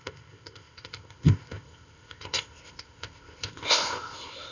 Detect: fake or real fake